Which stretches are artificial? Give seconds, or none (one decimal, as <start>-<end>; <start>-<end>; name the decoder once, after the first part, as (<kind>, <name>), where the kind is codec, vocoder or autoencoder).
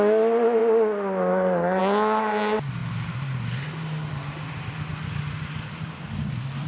none